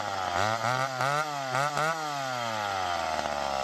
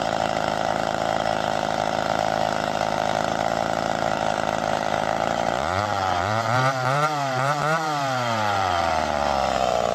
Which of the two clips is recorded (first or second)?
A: first